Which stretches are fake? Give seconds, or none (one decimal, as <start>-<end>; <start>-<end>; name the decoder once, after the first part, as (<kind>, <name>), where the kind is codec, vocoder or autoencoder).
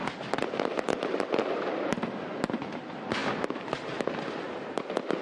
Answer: 0.4-1.7 (vocoder, BigVGAN v2)